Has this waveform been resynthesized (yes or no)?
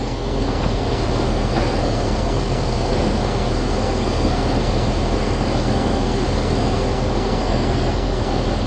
yes